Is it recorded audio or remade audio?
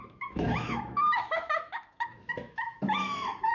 remade